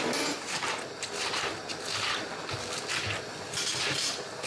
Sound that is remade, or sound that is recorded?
recorded